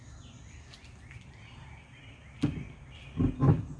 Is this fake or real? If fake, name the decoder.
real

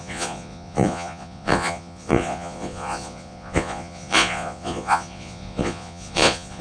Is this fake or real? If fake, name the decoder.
fake, vocoder, Vocos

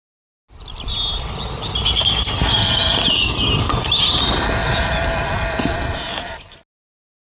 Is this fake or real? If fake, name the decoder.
real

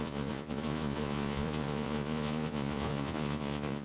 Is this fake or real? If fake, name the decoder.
fake, vocoder, Vocos